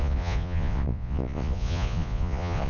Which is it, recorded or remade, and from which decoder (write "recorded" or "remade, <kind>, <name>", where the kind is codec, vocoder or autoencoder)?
remade, vocoder, Vocos